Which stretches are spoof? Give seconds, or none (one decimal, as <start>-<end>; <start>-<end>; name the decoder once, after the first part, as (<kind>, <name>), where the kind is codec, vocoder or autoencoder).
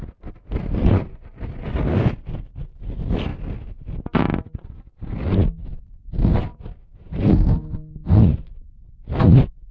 none